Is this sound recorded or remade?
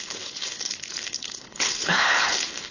remade